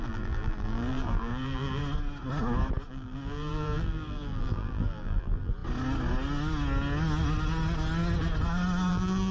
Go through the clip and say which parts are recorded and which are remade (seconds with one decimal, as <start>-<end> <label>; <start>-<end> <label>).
0.0-1.8 remade; 1.8-2.9 recorded; 2.9-5.5 remade; 5.5-8.9 recorded; 8.9-9.3 remade